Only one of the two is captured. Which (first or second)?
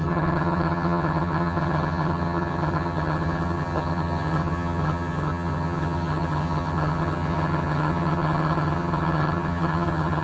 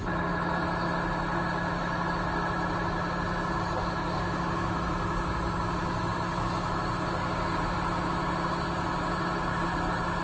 second